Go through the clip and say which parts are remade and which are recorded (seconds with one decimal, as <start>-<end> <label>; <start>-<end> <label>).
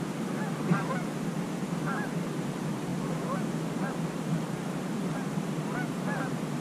0.0-2.9 remade; 2.9-5.6 recorded; 5.6-6.6 remade